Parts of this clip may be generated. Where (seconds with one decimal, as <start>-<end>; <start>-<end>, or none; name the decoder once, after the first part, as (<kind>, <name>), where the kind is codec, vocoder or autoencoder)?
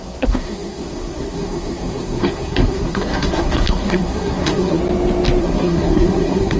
0.0-4.8 (codec, SNAC); 5.4-6.6